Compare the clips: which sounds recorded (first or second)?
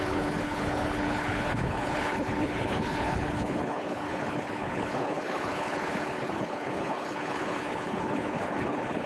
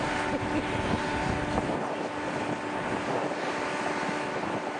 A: second